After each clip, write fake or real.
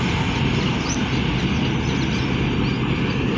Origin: real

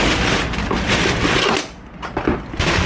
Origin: real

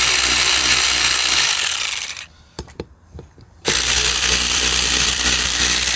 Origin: fake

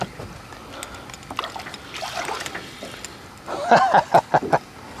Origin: real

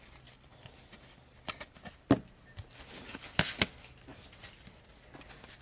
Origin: real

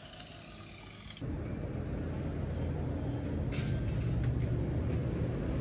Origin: real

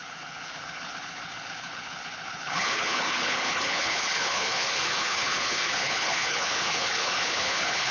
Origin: fake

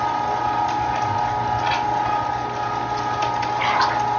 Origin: real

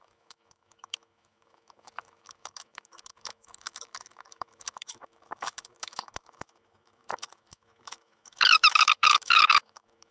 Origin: fake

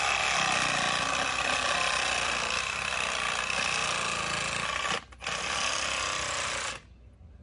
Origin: real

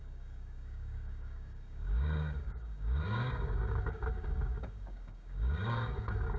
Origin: fake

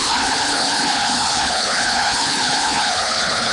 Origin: fake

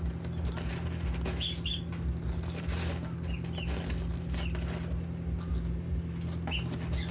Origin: real